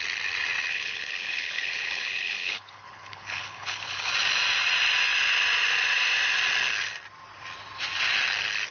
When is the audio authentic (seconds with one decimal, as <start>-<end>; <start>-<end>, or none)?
0.0-0.7; 4.1-8.7